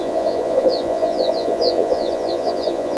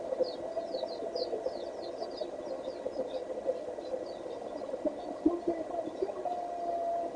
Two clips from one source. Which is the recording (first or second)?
second